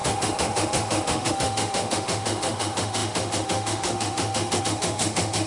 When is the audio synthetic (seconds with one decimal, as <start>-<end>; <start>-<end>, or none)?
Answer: 0.0-5.5